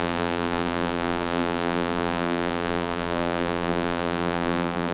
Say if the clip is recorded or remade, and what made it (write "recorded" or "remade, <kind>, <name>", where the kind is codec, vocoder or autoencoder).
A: remade, vocoder, BigVGAN v2